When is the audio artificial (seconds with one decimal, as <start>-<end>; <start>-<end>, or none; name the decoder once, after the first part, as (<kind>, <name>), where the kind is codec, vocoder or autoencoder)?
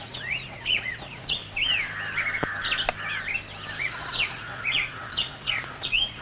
0.0-1.4 (vocoder, Vocos); 3.8-6.2